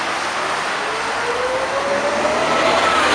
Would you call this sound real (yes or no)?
yes